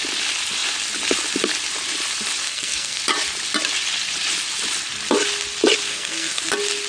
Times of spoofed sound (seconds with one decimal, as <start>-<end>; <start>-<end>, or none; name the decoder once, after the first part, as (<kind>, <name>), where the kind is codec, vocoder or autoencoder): 2.4-3.0 (codec, SNAC); 5.9-6.4